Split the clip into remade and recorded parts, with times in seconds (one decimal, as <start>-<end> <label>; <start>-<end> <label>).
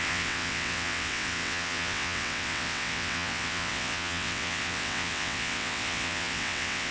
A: 0.0-6.9 remade